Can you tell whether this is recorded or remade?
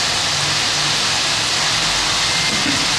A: recorded